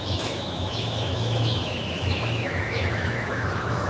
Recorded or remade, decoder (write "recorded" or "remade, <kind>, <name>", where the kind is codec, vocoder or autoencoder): remade, autoencoder, DAC-VAE